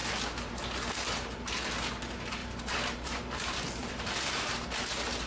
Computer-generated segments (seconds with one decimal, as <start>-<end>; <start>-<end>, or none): 2.4-4.5